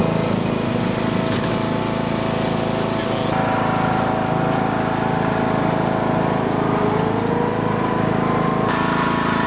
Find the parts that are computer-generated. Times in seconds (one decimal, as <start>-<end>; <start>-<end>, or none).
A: none